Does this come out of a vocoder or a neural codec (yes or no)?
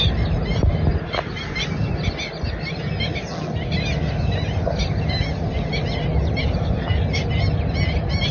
no